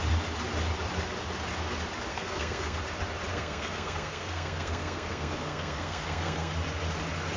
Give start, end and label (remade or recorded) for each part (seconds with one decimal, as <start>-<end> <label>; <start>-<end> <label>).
0.0-2.1 recorded; 2.1-2.8 remade; 2.8-3.3 recorded; 3.3-6.5 remade; 6.5-7.4 recorded